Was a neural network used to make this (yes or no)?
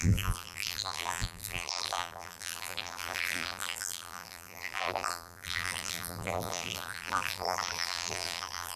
yes